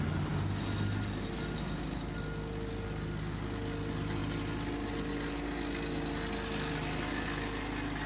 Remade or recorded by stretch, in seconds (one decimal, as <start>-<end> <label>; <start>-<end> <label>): 0.0-8.1 recorded